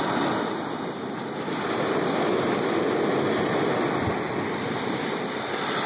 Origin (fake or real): real